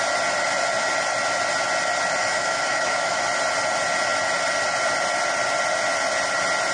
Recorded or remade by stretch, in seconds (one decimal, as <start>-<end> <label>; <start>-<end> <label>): 0.0-2.2 recorded; 2.2-3.2 remade; 3.2-6.7 recorded